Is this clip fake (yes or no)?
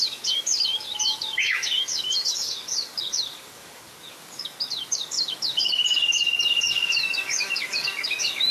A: yes